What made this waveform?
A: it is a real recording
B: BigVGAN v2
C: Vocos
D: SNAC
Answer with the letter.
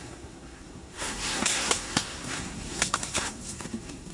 D